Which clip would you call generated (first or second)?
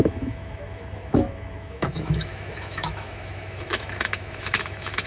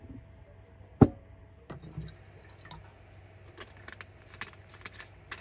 first